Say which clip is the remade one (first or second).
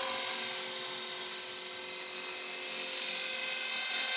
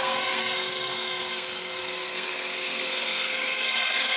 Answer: second